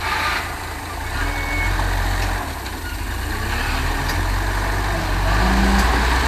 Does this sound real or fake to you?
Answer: real